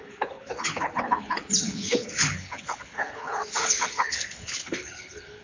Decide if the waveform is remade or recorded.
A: remade